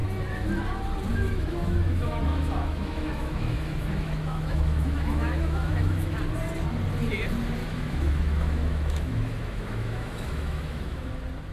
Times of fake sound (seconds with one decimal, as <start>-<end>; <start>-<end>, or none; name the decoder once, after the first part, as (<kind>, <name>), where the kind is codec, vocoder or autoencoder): 1.1-6.2 (autoencoder, DAC-VAE); 7.6-11.1